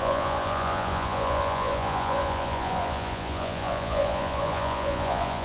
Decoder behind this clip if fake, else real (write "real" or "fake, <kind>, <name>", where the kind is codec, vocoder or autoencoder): fake, vocoder, Vocos